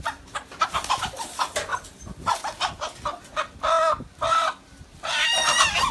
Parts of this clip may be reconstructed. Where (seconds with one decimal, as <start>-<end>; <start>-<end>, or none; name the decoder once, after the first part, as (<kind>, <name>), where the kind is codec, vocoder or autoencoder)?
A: 0.0-1.7 (vocoder, BigVGAN v2); 5.2-5.9